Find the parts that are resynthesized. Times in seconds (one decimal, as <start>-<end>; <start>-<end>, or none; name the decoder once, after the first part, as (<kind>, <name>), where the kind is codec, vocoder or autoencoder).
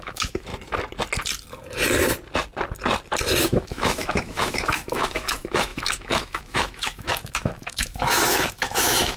0.0-0.5 (autoencoder, DAC-VAE); 3.4-9.2